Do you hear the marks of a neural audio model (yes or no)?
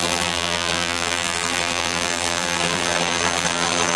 yes